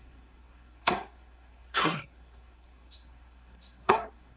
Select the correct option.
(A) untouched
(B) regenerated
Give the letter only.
B